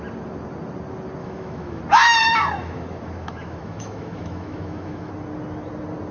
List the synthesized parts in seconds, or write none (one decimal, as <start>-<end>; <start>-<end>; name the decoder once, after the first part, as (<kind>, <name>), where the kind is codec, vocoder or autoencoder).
1.2-1.8 (autoencoder, DAC-VAE); 2.6-5.1